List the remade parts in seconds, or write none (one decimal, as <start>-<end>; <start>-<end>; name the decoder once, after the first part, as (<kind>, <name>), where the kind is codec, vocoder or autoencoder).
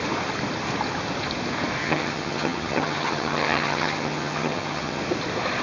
1.8-5.0 (vocoder, HiFi-GAN)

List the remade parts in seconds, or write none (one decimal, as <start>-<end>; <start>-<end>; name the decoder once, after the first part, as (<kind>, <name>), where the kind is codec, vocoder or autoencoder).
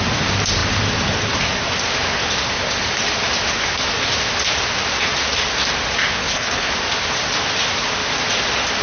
6.1-6.7 (codec, HILCodec)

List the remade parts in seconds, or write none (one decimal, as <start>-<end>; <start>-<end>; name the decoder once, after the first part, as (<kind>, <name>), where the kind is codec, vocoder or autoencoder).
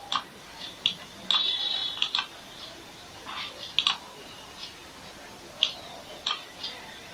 0.5-1.0 (vocoder, BigVGAN v2)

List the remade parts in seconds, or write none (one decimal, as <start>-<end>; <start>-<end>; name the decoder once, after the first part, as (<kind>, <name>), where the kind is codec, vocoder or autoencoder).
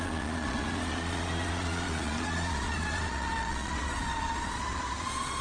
0.0-5.4 (vocoder, Vocos)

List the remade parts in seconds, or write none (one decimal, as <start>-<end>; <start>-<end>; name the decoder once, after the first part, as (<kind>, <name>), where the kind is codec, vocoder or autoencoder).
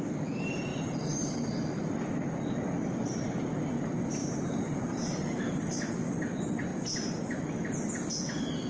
0.7-1.5 (vocoder, BigVGAN v2); 4.2-5.8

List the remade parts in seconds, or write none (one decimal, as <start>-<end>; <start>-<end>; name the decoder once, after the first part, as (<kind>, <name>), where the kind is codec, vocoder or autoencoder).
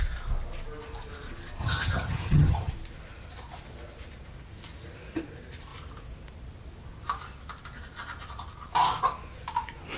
1.6-2.7 (vocoder, HiFi-GAN)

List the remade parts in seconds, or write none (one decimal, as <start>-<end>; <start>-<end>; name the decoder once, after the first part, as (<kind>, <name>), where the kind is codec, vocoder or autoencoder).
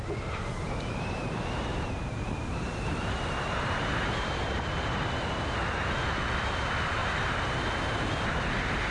1.2-5.4 (vocoder, BigVGAN v2); 7.0-7.6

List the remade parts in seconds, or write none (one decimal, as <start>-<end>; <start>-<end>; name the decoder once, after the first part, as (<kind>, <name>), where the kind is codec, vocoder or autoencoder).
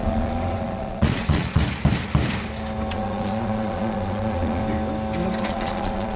0.0-1.6 (vocoder, Vocos); 2.9-4.6; 5.4-6.2